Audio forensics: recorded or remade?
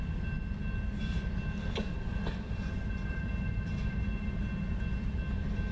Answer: recorded